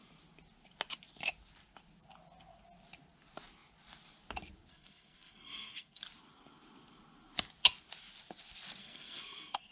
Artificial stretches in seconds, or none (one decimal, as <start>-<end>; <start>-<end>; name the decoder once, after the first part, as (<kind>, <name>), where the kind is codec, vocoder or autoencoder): 4.7-6.0 (codec, SNAC); 8.8-9.7